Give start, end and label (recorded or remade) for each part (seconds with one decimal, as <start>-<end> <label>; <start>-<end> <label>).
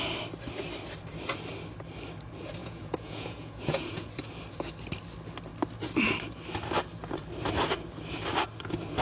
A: 0.0-2.6 recorded; 2.6-4.1 remade; 4.1-9.0 recorded